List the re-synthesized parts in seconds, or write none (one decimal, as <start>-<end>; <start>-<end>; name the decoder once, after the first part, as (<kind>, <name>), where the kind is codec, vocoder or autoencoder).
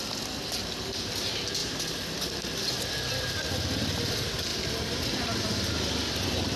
none